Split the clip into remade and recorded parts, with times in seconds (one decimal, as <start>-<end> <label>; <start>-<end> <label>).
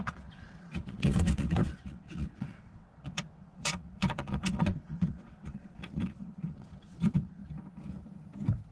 0.0-7.4 remade; 7.4-8.7 recorded